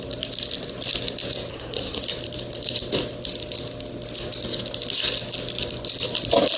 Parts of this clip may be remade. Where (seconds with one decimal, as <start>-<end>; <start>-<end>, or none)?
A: 1.5-2.0